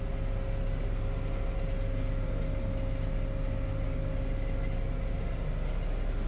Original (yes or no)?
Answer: yes